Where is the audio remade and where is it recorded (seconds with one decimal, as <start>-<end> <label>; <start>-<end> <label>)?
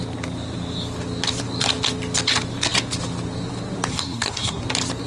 0.0-3.9 recorded; 3.9-4.6 remade; 4.6-5.1 recorded